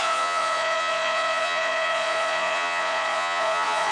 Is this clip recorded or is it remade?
remade